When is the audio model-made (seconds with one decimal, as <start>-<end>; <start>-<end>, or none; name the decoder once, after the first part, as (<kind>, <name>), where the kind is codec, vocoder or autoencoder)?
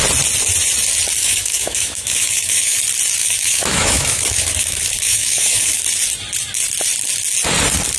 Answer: 1.2-2.8 (autoencoder, DAC-VAE); 3.2-5.8